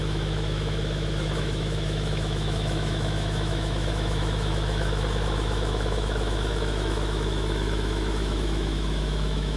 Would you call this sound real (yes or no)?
no